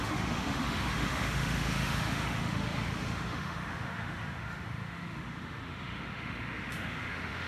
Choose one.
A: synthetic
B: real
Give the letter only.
A